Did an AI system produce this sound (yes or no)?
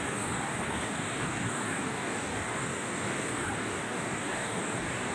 yes